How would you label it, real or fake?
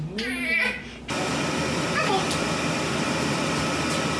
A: real